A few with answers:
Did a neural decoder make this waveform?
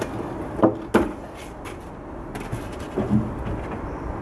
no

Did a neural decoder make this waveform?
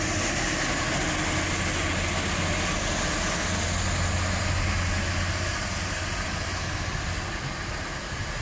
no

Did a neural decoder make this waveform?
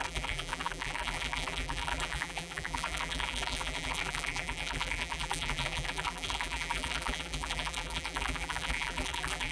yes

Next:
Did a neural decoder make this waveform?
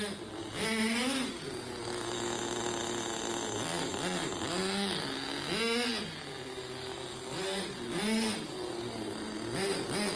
no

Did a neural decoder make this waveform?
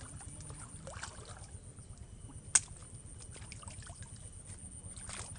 no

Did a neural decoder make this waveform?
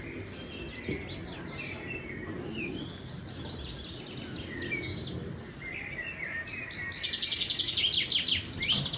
no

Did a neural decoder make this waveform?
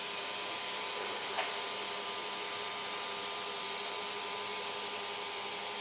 yes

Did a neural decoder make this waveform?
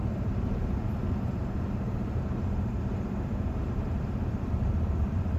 yes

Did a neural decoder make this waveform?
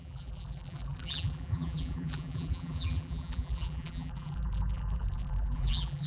yes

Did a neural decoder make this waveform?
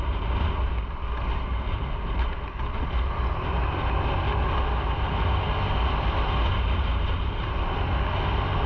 no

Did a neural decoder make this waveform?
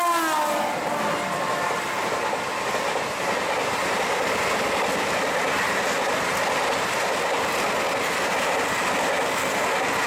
no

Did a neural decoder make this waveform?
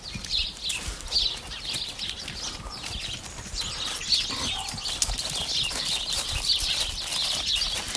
no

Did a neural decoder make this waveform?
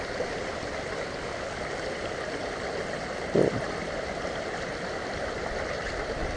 yes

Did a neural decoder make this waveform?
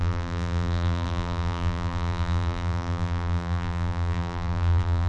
yes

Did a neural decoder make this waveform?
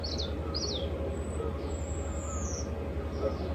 no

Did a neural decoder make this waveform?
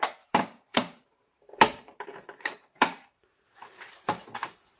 yes